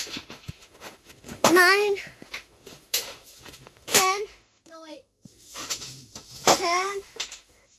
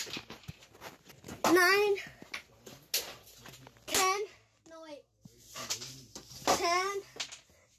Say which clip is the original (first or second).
second